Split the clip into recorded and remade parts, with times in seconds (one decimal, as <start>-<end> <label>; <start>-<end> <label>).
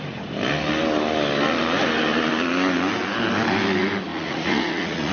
0.0-4.1 recorded; 4.1-5.1 remade